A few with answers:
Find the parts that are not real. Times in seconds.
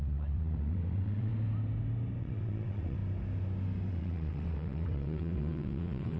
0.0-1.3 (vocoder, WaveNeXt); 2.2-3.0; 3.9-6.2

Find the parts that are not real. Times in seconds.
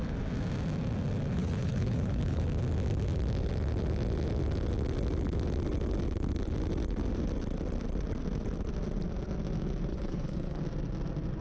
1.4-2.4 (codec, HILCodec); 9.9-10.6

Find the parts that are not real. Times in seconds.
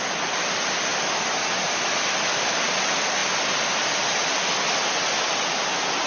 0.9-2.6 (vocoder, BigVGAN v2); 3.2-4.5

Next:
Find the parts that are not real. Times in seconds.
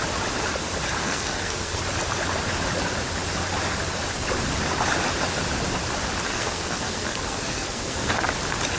1.0-1.8 (codec, SNAC); 6.3-8.1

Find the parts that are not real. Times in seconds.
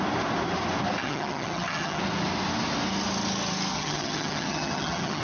1.0-2.0 (vocoder, HiFi-GAN); 3.7-5.2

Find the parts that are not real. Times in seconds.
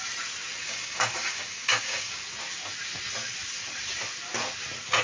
0.6-2.2 (codec, DAC)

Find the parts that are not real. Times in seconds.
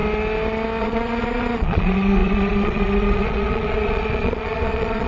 0.8-5.1 (vocoder, Vocos)